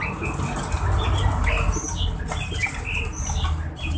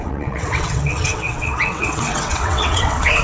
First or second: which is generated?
second